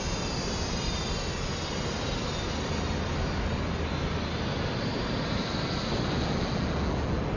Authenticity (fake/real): real